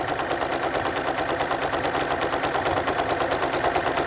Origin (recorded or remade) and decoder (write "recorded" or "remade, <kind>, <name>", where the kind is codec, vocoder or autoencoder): recorded